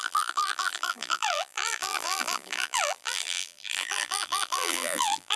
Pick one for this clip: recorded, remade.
remade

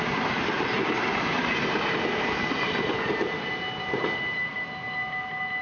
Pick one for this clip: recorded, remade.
recorded